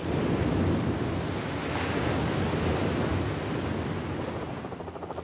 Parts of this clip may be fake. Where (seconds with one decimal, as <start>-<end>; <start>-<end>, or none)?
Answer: none